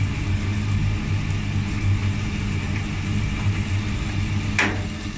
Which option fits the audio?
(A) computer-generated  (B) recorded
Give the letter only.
B